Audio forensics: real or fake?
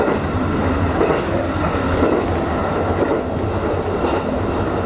real